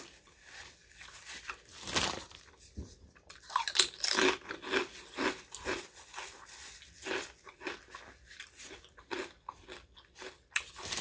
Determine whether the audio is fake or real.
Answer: real